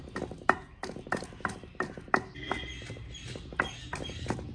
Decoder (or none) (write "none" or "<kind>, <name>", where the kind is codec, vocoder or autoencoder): none